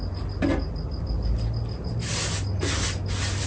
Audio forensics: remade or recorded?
recorded